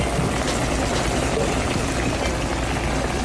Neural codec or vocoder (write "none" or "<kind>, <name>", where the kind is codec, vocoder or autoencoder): none